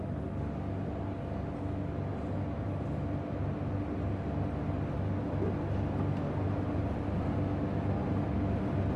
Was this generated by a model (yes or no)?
no